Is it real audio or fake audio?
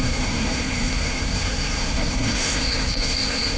fake